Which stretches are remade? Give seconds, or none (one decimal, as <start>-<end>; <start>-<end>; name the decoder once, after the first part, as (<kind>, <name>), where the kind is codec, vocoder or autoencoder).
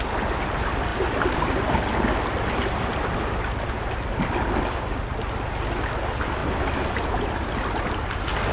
none